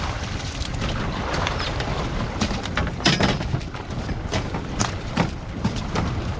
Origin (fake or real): real